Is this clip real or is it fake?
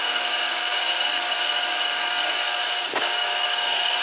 fake